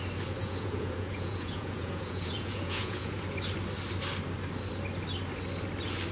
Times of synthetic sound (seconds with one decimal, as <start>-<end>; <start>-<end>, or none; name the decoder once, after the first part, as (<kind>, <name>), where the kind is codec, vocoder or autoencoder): 0.4-3.2 (vocoder, Vocos)